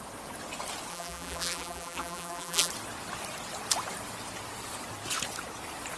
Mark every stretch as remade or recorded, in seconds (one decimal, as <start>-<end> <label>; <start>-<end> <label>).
0.0-0.9 recorded; 0.9-2.7 remade; 2.7-6.0 recorded